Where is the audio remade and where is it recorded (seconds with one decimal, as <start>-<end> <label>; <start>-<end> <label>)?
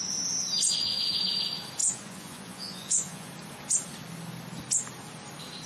0.0-0.7 recorded; 0.7-1.2 remade; 1.2-1.8 recorded; 1.8-3.3 remade; 3.3-5.7 recorded